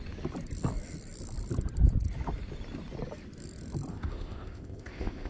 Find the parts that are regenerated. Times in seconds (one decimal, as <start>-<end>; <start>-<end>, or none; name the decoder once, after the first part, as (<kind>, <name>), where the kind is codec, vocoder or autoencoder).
3.9-5.3 (codec, ZipCodec)